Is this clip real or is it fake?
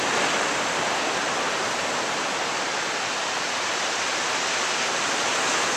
real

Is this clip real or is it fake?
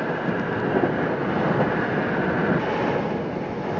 real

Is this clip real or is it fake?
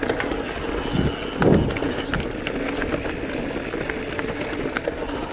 real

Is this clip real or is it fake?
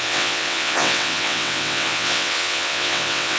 fake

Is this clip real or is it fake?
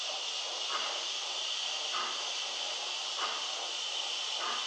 real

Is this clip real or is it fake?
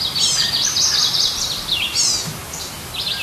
real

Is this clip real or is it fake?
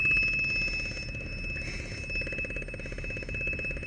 real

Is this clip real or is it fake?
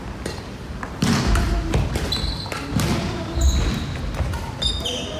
real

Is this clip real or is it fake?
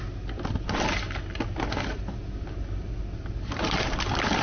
real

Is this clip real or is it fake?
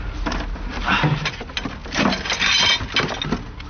real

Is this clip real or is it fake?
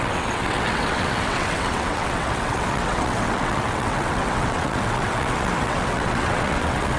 fake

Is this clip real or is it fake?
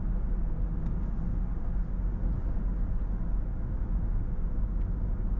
real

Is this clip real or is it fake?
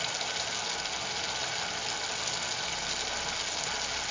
real